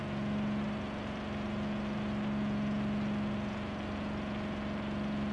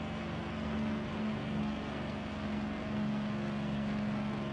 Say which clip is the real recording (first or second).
first